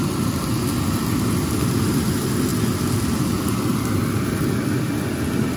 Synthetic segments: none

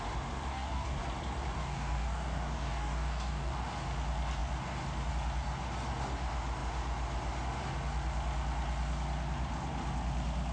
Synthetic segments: 0.5-1.0; 1.6-3.6

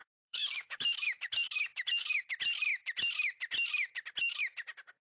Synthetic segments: 0.0-2.2